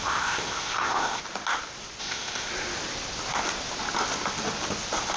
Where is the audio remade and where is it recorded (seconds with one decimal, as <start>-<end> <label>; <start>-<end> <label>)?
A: 0.0-1.2 remade; 1.2-2.0 recorded; 2.0-2.5 remade; 2.5-5.2 recorded